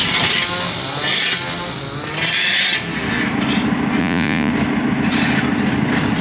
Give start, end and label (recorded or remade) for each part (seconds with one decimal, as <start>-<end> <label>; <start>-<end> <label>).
0.0-4.0 recorded; 4.0-4.5 remade; 4.5-6.2 recorded